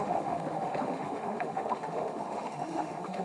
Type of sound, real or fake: fake